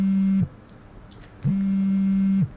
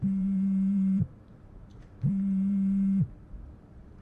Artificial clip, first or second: second